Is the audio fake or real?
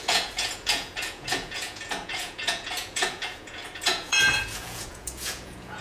fake